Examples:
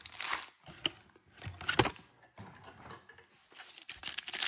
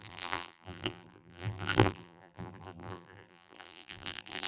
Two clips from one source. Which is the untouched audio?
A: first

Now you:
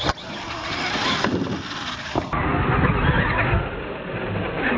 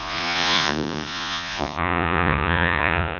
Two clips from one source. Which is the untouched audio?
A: first